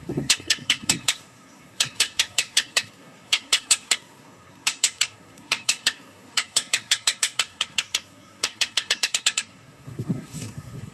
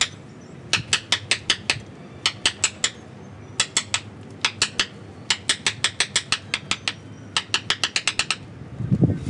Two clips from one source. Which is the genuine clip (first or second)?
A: second